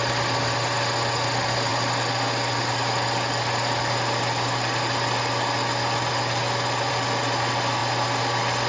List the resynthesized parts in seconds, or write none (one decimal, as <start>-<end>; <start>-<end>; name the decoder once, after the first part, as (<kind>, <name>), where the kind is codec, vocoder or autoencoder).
none

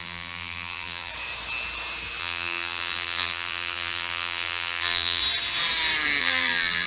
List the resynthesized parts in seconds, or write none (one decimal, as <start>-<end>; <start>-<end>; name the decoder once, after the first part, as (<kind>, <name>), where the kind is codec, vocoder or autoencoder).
0.0-1.1 (vocoder, BigVGAN v2); 2.2-5.2; 6.2-6.9

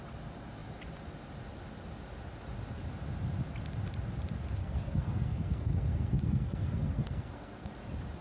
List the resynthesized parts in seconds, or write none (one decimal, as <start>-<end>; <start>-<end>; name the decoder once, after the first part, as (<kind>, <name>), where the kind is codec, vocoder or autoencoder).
4.6-7.7 (codec, SNAC)

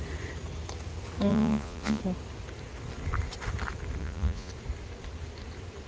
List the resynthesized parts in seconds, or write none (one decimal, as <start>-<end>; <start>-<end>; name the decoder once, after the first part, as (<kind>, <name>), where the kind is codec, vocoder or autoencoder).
1.3-2.0 (vocoder, Vocos); 4.0-4.5